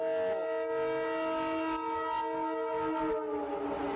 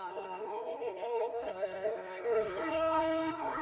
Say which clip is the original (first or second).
first